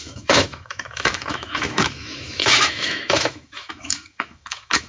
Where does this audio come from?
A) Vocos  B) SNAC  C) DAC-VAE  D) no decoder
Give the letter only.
C